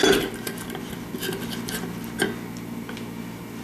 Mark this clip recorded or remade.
recorded